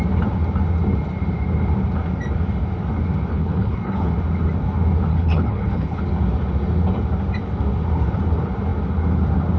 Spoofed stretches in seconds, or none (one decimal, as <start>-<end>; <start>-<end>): 3.3-4.1; 5.1-6.0